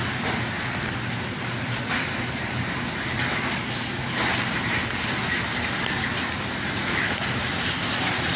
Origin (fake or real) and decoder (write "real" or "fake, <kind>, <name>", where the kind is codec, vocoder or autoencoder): real